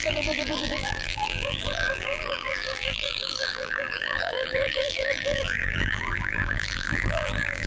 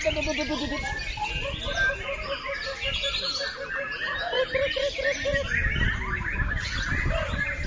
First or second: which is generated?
first